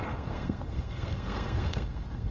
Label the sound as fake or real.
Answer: fake